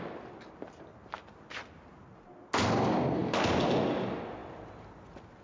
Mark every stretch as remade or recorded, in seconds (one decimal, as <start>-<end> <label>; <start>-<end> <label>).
0.0-5.4 recorded